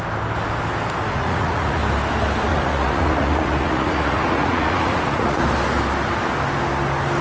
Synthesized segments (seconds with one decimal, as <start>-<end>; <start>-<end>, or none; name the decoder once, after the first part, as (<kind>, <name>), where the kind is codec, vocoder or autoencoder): 1.1-1.8 (vocoder, Vocos); 2.5-5.4